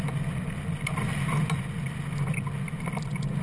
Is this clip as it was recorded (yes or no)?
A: yes